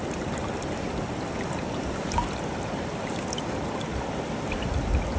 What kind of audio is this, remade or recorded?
recorded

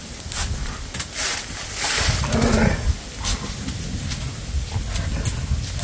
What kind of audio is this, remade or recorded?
recorded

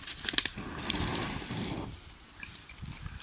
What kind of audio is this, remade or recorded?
remade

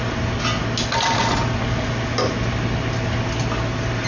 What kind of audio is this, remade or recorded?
recorded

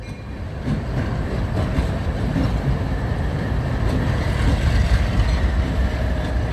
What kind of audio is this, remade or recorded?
remade